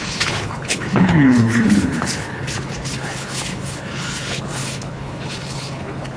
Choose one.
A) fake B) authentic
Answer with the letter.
A